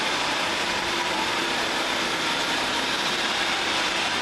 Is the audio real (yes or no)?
no